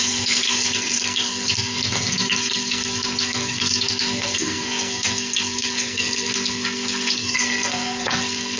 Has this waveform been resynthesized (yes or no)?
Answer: yes